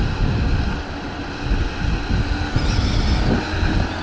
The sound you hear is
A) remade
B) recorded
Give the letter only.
B